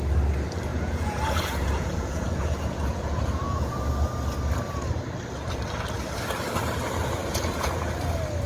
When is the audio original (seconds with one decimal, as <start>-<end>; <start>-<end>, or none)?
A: 0.0-0.7; 3.8-7.2; 7.9-8.5

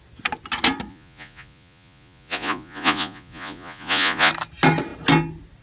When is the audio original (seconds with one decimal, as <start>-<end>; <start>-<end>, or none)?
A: 0.0-0.9; 4.3-5.6

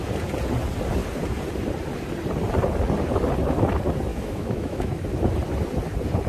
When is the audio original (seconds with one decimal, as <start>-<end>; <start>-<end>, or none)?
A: 0.0-4.1; 5.0-6.3

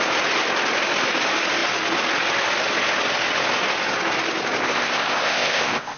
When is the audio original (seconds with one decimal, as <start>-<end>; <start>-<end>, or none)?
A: 0.0-4.6

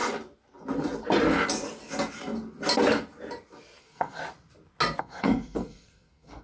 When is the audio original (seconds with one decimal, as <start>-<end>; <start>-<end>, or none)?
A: 0.0-3.8; 4.2-5.0